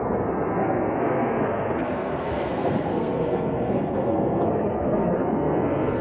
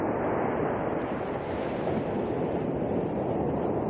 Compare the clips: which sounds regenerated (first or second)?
first